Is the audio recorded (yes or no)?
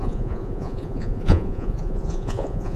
no